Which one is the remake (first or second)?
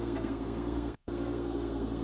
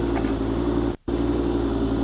first